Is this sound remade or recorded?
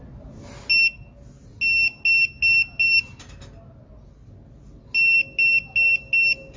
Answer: recorded